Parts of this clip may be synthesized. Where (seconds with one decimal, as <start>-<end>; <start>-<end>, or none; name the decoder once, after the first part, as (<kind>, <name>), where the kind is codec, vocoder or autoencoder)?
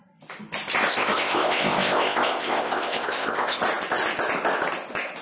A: 0.9-3.6 (codec, ZipCodec)